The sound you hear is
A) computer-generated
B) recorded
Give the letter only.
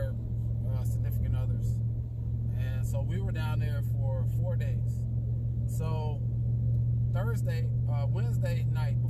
B